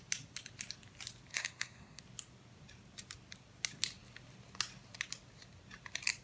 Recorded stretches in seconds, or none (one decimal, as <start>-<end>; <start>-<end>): 0.0-1.3; 2.0-6.2